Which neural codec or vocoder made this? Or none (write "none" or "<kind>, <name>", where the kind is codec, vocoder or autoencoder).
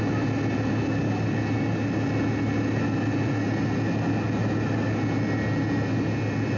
none